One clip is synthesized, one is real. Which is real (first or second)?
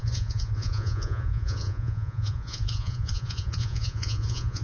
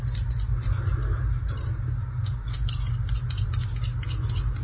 second